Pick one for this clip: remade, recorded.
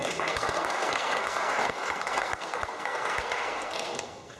remade